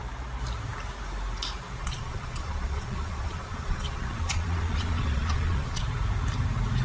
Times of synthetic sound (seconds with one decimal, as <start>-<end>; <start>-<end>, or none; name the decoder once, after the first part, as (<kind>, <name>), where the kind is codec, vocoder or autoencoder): 1.8-5.8 (vocoder, Vocos)